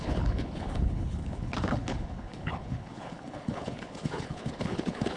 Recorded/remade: remade